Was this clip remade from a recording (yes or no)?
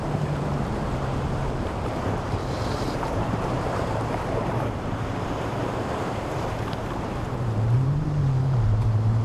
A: yes